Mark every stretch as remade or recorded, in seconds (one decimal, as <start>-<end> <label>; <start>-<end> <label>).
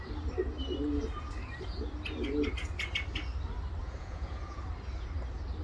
0.0-3.8 recorded; 3.8-4.6 remade; 4.6-5.6 recorded